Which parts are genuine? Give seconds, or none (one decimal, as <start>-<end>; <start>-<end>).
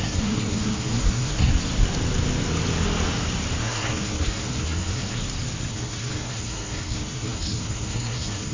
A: 1.5-3.6; 5.2-5.7